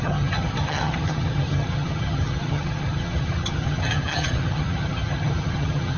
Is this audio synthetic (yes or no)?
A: yes